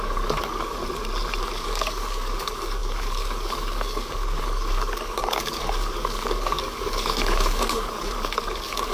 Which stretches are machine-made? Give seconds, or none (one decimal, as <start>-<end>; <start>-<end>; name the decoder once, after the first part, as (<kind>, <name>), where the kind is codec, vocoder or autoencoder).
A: 0.0-0.8 (codec, DAC); 1.4-8.9